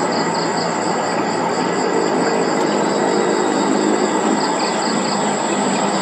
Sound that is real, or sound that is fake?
real